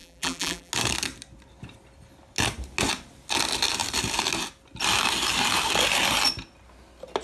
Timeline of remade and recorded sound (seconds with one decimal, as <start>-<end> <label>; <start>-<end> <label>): 0.0-0.7 remade; 0.7-7.2 recorded